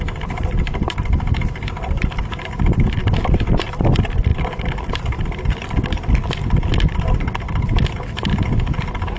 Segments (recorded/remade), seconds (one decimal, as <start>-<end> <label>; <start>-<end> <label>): 0.0-9.2 recorded